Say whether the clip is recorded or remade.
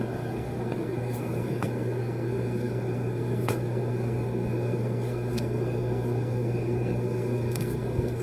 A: remade